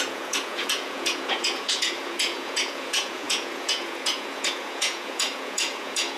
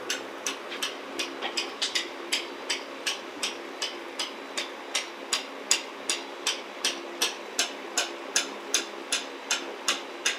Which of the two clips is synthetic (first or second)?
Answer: first